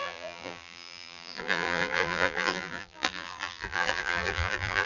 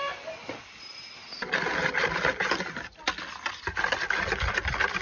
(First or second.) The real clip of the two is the second